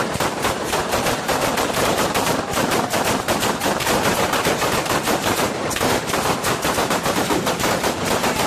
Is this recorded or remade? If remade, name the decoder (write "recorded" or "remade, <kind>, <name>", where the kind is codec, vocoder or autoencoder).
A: remade, vocoder, BigVGAN v2